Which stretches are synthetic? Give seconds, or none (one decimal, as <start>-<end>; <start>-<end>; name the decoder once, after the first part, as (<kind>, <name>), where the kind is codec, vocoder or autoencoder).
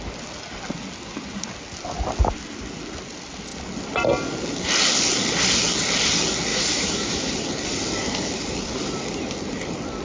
6.5-7.3 (autoencoder, DAC-VAE)